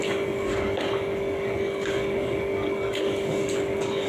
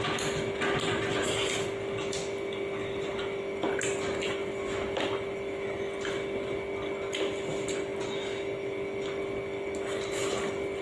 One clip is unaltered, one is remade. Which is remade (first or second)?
first